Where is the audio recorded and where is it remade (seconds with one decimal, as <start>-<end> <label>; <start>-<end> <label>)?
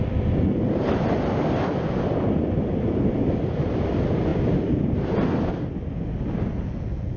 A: 0.0-7.2 recorded